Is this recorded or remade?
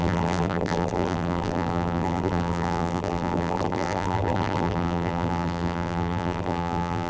remade